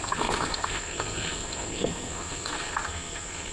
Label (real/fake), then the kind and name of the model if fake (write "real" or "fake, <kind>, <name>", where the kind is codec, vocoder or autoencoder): fake, codec, SNAC